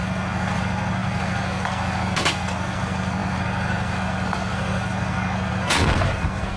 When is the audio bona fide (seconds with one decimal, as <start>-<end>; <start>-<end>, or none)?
none